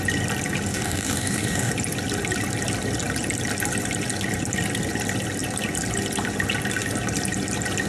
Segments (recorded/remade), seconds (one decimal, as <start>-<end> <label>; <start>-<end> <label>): 0.0-0.7 recorded; 0.7-1.7 remade; 1.7-7.9 recorded